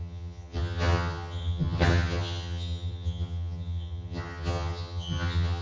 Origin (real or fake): fake